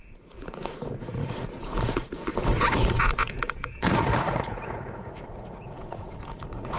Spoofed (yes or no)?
yes